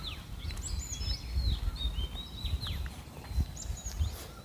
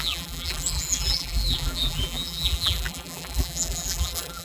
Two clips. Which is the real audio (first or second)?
first